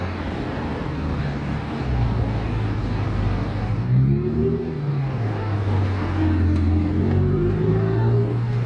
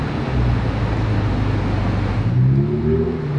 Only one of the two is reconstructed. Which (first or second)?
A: first